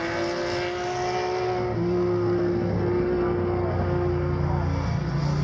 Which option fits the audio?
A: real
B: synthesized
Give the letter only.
A